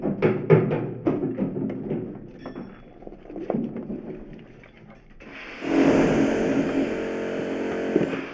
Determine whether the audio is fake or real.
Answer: real